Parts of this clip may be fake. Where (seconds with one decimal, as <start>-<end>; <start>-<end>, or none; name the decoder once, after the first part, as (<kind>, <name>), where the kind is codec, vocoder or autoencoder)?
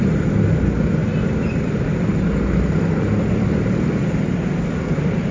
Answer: none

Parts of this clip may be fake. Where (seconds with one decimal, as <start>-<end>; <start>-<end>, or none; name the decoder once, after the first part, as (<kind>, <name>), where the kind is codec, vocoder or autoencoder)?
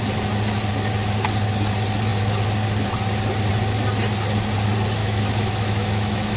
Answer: 5.0-6.4 (autoencoder, DAC-VAE)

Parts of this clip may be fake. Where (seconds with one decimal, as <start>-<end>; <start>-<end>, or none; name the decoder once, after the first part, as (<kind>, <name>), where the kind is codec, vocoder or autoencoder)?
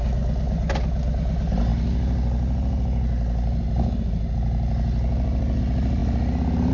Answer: none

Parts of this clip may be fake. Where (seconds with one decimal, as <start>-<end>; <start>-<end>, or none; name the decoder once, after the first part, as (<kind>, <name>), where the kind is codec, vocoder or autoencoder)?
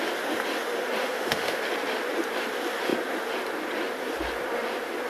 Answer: 1.0-1.6 (autoencoder, DAC-VAE)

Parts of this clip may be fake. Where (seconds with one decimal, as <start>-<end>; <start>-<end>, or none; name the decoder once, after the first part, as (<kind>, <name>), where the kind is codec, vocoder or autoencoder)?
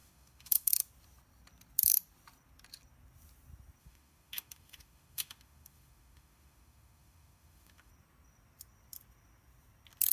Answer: 0.0-0.7 (autoencoder, DAC-VAE); 3.8-7.9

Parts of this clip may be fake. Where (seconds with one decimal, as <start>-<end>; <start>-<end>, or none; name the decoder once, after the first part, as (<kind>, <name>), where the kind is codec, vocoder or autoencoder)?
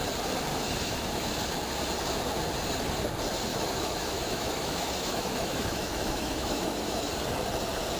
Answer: 0.5-1.4 (autoencoder, DAC-VAE); 3.5-7.1